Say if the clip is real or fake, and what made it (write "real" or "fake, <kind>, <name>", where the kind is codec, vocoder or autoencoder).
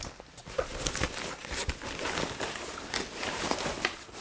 real